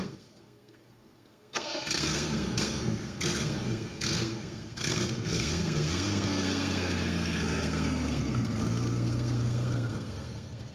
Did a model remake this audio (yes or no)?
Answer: yes